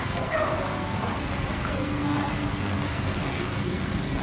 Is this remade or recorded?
remade